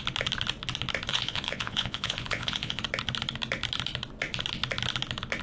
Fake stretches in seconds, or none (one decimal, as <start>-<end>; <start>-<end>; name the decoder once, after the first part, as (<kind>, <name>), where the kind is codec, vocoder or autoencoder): 1.1-2.8 (vocoder, Vocos)